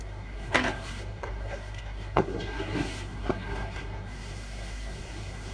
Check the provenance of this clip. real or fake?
fake